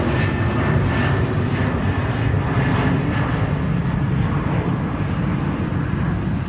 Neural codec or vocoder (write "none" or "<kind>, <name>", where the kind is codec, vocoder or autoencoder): none